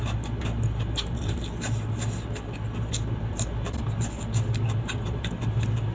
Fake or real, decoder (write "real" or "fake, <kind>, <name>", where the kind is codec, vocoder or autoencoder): real